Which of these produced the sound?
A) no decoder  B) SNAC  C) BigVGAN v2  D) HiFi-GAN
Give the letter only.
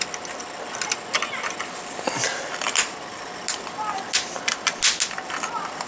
A